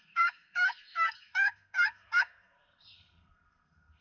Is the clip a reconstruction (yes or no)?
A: yes